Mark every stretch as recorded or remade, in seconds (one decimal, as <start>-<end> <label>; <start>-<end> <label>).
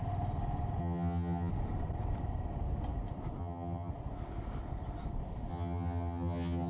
0.0-0.8 recorded; 0.8-1.5 remade; 1.5-3.4 recorded; 3.4-3.9 remade; 3.9-5.5 recorded; 5.5-6.7 remade